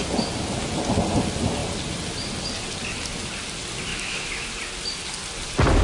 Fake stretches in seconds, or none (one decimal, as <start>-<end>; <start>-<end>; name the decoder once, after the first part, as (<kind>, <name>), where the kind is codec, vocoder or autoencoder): 3.9-4.5 (autoencoder, DAC-VAE)

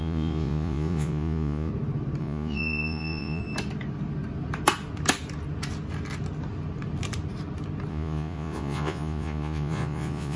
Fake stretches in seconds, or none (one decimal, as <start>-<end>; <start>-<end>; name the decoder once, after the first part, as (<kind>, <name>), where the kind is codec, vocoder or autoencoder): 0.0-1.7 (vocoder, Vocos); 2.2-3.4; 7.9-10.4

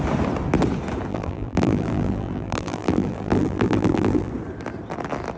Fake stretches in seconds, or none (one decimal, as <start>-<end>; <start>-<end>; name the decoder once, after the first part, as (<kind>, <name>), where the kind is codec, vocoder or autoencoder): 1.1-4.3 (vocoder, BigVGAN v2)

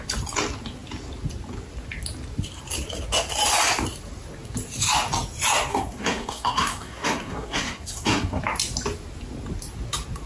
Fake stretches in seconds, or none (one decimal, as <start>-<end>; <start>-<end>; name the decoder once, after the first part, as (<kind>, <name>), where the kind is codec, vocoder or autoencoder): 5.7-8.4 (codec, SNAC)

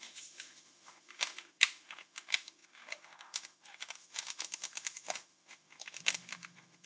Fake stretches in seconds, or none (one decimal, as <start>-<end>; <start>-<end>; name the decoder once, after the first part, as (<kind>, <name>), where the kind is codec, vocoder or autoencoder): 0.0-6.9 (autoencoder, DAC-VAE)

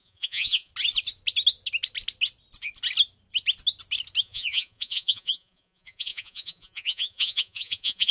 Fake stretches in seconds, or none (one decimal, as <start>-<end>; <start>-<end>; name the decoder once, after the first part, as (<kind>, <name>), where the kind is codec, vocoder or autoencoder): 0.0-0.7 (vocoder, Vocos); 4.2-8.1

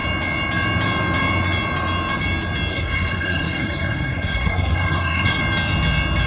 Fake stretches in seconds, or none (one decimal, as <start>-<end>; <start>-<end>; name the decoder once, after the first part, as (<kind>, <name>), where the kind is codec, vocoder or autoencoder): 2.7-5.4 (codec, SNAC)